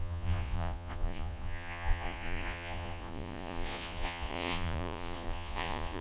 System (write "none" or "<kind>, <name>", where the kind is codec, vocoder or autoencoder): vocoder, Vocos